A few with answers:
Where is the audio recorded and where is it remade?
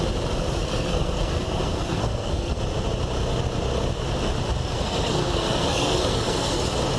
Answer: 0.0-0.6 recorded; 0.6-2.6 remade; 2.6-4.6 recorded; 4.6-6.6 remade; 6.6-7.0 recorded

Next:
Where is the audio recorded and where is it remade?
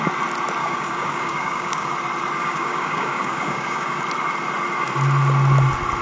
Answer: 0.0-0.6 recorded; 0.6-1.9 remade; 1.9-2.4 recorded; 2.4-4.0 remade; 4.0-6.0 recorded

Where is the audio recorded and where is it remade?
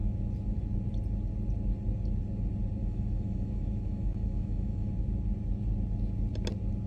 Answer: 0.0-2.8 recorded; 2.8-4.9 remade; 4.9-6.9 recorded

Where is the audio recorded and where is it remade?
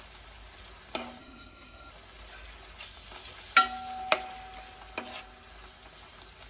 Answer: 0.0-1.2 recorded; 1.2-1.9 remade; 1.9-6.5 recorded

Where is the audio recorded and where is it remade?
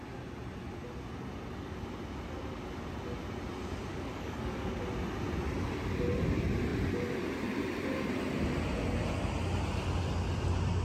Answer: 0.0-3.9 recorded; 3.9-4.8 remade; 4.8-10.8 recorded